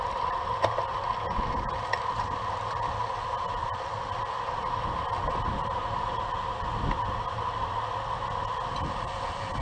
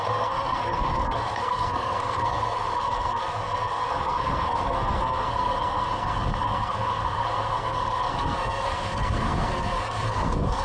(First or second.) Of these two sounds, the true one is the first